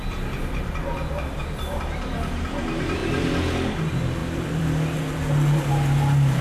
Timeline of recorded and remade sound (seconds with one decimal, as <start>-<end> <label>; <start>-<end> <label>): 0.0-1.4 remade; 1.4-4.2 recorded; 4.2-5.7 remade; 5.7-6.4 recorded